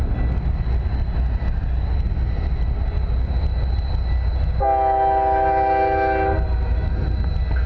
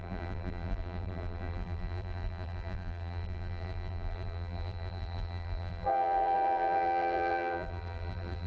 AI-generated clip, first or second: second